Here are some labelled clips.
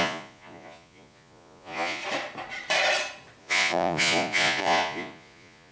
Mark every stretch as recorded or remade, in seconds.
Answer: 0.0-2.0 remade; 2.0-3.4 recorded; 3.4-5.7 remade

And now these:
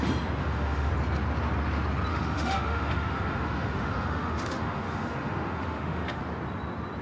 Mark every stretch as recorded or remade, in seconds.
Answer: 0.0-0.4 recorded; 0.4-0.9 remade; 0.9-2.1 recorded; 2.1-6.2 remade; 6.2-7.0 recorded

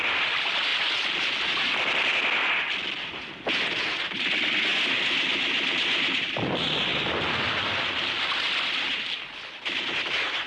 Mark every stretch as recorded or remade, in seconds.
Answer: 0.0-10.5 recorded